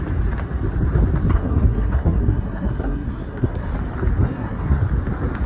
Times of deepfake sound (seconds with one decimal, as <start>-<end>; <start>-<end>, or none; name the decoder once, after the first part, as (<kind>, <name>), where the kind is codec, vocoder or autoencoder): 1.3-3.7 (codec, SNAC); 4.2-4.8